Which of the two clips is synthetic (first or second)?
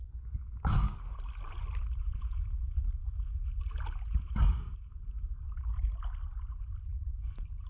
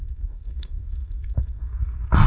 second